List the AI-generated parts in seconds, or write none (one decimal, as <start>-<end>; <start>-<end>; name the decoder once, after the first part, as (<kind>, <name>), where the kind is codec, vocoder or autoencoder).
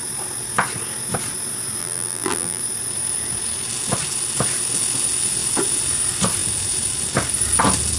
1.8-2.6 (vocoder, BigVGAN v2)